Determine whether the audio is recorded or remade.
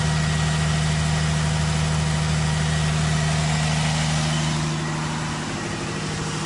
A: recorded